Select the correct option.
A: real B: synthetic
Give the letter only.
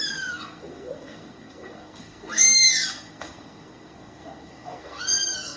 B